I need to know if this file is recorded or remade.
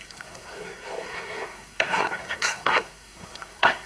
remade